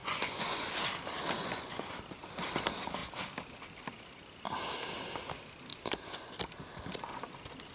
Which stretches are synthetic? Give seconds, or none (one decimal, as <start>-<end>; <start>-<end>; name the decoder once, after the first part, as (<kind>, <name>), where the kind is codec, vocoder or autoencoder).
0.0-0.7 (vocoder, Vocos); 1.4-1.9; 5.7-6.3